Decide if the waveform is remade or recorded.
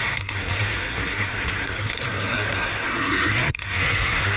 remade